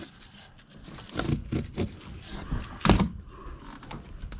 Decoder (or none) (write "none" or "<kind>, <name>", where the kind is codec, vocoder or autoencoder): none